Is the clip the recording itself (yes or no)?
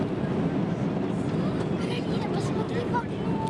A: yes